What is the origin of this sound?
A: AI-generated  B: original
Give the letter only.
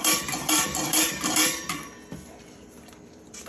A